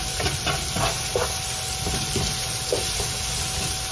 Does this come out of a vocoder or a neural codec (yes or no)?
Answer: no